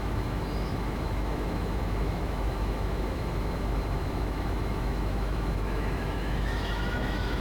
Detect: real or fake fake